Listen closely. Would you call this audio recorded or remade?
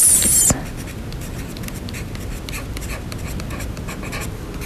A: recorded